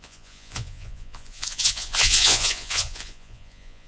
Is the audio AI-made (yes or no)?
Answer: yes